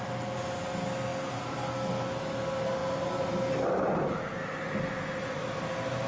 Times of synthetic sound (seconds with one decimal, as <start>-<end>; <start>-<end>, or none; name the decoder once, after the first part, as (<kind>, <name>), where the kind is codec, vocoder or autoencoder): none